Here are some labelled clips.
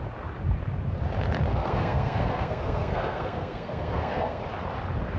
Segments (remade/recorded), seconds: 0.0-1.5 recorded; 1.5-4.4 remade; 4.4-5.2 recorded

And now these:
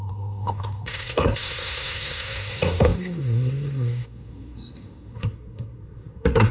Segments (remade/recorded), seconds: 0.0-6.5 remade